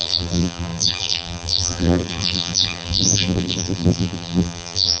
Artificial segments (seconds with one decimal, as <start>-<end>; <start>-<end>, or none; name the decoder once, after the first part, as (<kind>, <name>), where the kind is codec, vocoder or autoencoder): 0.0-5.0 (vocoder, BigVGAN v2)